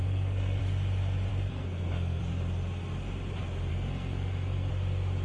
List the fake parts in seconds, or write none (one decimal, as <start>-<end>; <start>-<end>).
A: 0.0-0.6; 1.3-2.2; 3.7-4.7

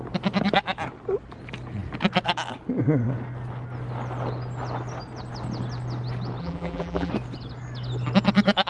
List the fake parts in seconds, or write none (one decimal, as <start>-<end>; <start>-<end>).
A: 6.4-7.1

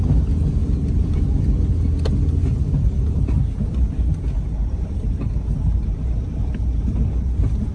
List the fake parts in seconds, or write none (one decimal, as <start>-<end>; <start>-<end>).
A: 0.6-1.5; 2.4-6.5

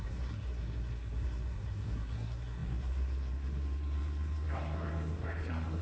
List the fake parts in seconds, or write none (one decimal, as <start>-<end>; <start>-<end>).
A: 0.0-5.8

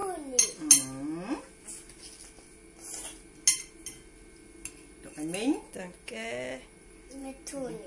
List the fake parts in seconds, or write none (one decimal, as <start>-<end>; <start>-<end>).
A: none